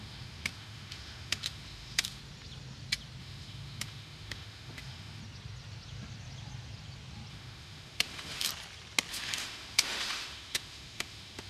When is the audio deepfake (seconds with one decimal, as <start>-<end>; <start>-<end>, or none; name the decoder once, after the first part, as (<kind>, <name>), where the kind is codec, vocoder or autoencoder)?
0.0-2.2 (autoencoder, DAC-VAE); 3.2-5.2; 7.3-8.5; 9.1-11.5